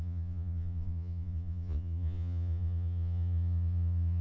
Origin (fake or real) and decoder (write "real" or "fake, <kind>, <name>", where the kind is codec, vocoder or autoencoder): fake, vocoder, Vocos